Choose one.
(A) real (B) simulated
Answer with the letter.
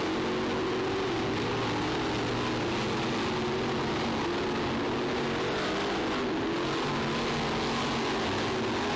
A